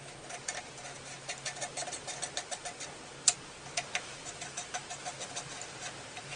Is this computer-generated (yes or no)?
no